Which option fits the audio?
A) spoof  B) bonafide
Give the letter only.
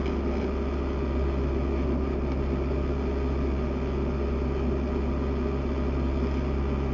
B